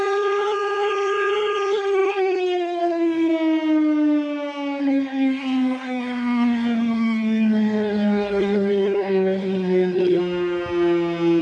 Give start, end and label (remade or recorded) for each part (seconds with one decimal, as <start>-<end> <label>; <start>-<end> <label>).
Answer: 0.0-3.3 remade; 3.3-4.8 recorded; 4.8-10.2 remade; 10.2-11.4 recorded